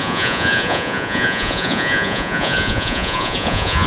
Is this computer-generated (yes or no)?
yes